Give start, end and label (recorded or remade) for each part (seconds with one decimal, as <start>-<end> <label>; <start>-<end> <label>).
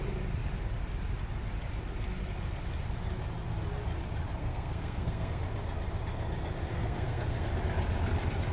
0.0-4.4 recorded; 4.4-5.4 remade; 5.4-6.7 recorded; 6.7-7.5 remade; 7.5-8.5 recorded